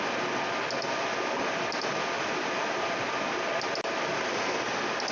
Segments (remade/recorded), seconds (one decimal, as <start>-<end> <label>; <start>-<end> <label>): 0.0-5.1 recorded